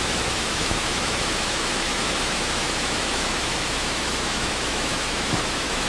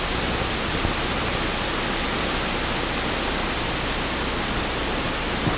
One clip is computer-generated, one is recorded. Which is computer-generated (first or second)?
first